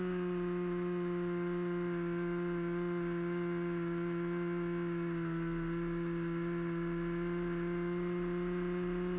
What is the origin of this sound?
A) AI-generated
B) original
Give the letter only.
B